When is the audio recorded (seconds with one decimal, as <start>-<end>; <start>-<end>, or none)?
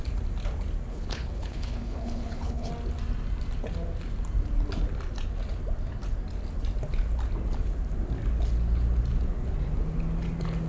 0.0-0.9; 2.7-10.7